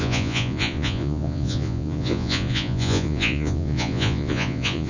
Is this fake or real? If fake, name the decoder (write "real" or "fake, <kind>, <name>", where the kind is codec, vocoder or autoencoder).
fake, vocoder, Vocos